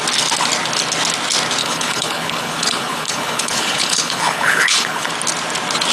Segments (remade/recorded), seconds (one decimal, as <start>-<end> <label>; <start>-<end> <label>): 0.0-1.6 recorded; 1.6-5.1 remade; 5.1-5.9 recorded